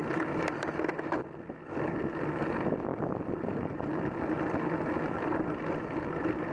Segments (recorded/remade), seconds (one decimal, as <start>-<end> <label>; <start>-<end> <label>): 0.0-0.9 remade; 0.9-6.5 recorded